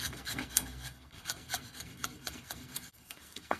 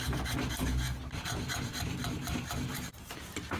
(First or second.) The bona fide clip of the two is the second